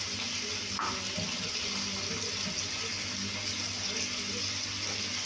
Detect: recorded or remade recorded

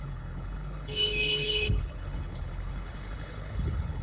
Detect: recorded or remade remade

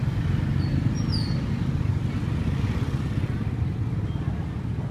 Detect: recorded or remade recorded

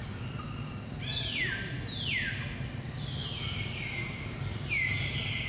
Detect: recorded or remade recorded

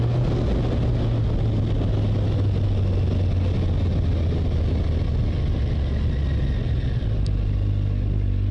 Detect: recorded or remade recorded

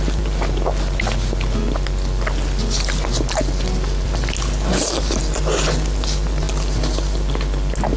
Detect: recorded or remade recorded